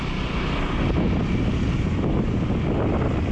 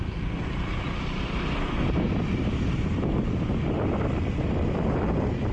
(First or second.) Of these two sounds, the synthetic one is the second